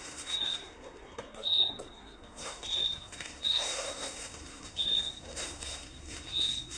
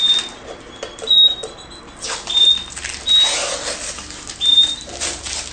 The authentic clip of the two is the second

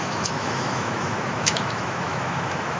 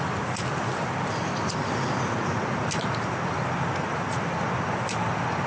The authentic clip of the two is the second